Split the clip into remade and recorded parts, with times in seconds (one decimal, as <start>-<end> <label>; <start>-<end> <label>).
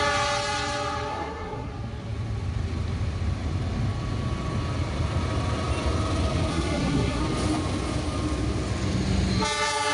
0.0-1.1 recorded; 1.1-1.7 remade; 1.7-6.5 recorded; 6.5-7.2 remade; 7.2-9.9 recorded